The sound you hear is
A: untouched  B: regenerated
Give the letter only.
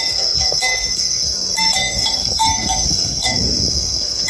B